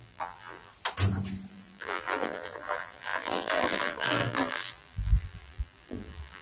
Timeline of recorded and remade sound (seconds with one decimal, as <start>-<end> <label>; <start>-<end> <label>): 0.0-0.7 remade; 0.7-1.5 recorded; 1.5-6.4 remade